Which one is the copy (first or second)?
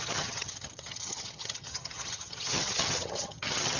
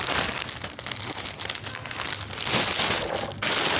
first